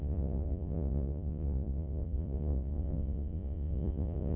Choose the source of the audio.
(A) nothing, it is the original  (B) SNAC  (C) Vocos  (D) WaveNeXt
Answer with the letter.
C